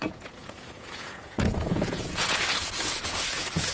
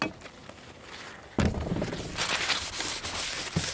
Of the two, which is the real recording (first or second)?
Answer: second